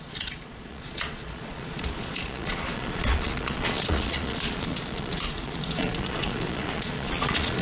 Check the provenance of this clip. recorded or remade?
remade